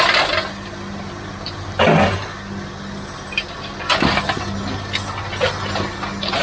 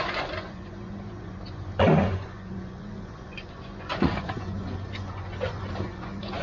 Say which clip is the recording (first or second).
first